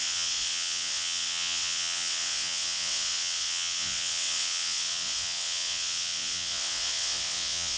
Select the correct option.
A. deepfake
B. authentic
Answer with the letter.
A